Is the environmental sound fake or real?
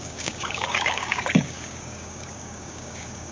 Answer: fake